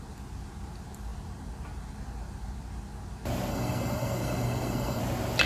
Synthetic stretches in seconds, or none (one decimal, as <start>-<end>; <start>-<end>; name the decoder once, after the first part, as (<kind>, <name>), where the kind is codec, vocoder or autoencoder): 3.5-5.0 (codec, SNAC)